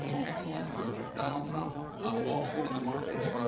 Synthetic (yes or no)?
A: yes